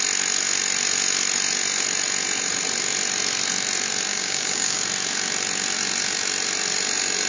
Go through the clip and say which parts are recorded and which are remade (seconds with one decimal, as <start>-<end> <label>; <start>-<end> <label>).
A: 0.0-4.1 recorded; 4.1-4.8 remade; 4.8-7.3 recorded